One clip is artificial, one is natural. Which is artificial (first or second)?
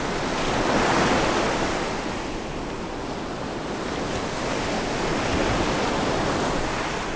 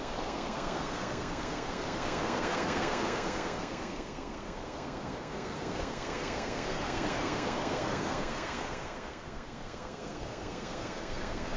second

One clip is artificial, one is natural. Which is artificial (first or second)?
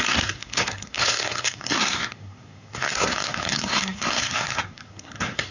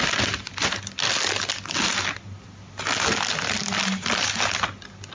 first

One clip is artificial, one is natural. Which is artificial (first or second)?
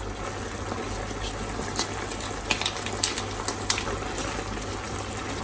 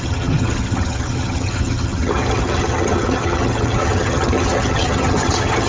second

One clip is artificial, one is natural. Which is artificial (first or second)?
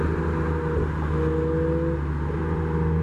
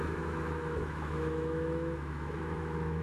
second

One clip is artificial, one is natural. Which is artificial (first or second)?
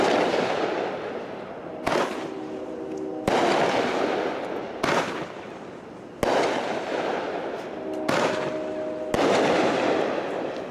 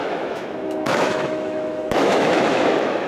second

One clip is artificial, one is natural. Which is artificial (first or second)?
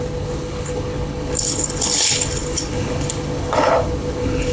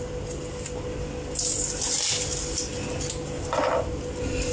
first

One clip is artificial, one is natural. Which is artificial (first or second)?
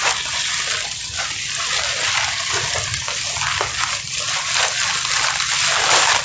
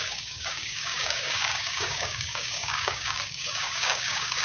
second